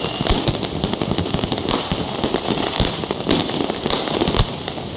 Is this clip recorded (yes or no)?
yes